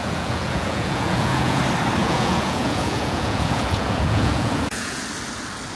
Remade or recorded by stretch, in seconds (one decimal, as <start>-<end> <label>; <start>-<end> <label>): 0.0-1.6 remade; 1.6-2.0 recorded; 2.0-5.0 remade; 5.0-5.8 recorded